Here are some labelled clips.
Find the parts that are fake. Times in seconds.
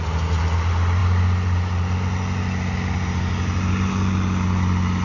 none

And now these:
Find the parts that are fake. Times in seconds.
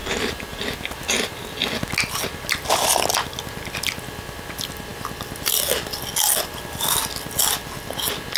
none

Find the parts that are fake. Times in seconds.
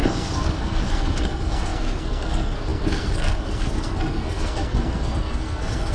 0.0-5.9 (codec, SNAC)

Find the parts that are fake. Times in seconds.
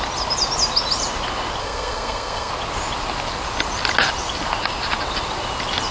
1.6-2.5 (codec, SNAC)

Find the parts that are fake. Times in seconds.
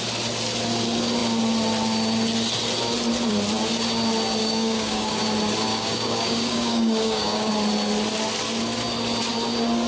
4.4-5.2 (codec, DAC); 5.7-7.5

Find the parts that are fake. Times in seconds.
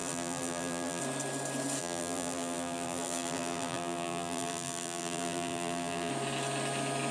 0.0-1.0 (vocoder, BigVGAN v2); 1.8-6.1